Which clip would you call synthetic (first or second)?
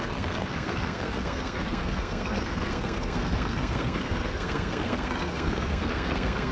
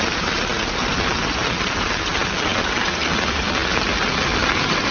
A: first